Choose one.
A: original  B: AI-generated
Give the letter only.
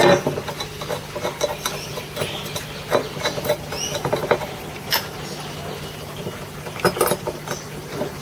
A